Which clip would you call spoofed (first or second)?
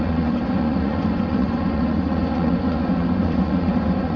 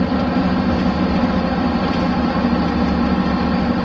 first